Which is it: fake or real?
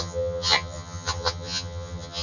fake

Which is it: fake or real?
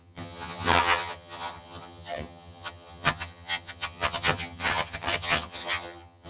fake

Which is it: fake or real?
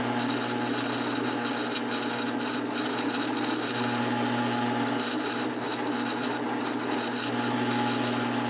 real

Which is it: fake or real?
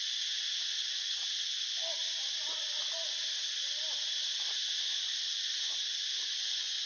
real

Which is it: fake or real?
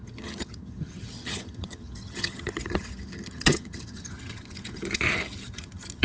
fake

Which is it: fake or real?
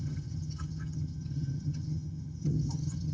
fake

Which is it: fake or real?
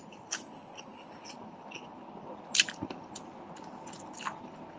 real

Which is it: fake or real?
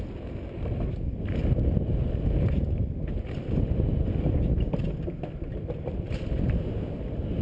real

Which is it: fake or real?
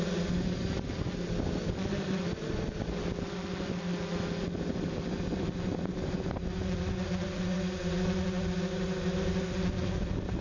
real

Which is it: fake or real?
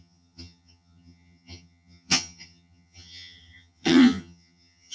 fake